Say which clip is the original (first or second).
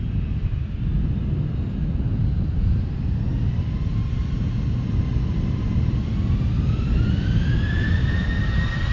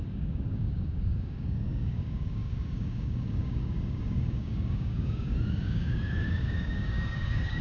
first